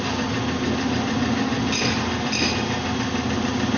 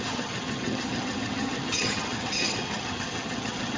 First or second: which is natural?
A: first